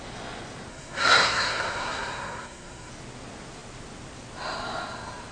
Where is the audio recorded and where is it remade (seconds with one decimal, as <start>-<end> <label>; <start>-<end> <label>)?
0.0-0.7 recorded; 0.7-2.9 remade; 2.9-5.3 recorded